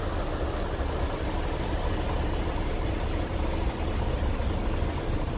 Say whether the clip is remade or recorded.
recorded